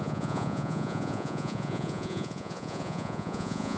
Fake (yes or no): yes